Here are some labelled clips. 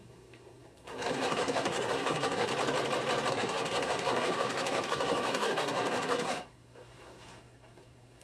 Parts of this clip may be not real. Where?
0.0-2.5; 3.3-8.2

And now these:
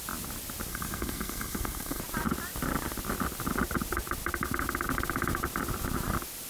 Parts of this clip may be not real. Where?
0.7-2.0